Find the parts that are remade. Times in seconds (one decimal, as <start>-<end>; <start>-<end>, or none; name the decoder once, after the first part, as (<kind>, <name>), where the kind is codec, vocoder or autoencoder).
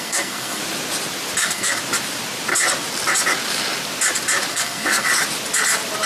0.0-0.6 (codec, SNAC); 1.4-1.8; 4.5-5.1